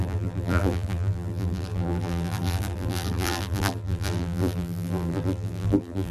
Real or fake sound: fake